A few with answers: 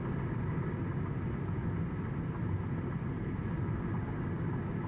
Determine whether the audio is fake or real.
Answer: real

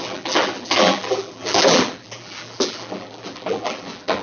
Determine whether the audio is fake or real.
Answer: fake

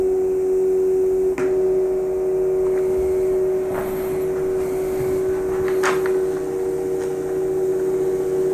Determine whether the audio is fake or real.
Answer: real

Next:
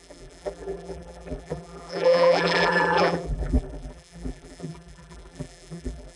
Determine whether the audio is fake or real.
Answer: fake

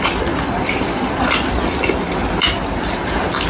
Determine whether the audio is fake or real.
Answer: fake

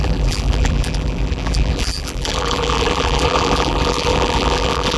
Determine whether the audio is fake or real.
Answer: fake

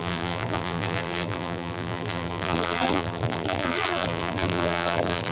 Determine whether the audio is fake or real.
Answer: fake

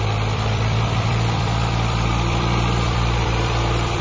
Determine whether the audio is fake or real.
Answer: fake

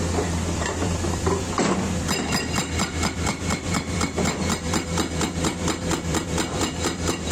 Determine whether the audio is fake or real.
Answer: fake